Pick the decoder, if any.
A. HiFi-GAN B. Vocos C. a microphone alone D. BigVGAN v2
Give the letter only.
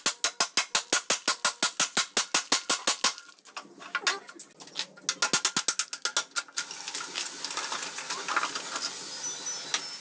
C